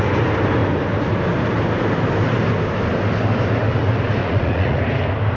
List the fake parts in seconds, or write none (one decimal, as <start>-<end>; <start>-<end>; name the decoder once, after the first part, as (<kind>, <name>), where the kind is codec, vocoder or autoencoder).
4.2-4.8 (vocoder, Vocos)